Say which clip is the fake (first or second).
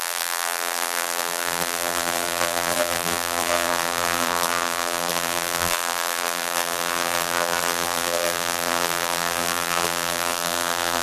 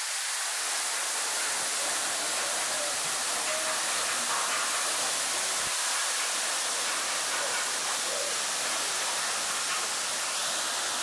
first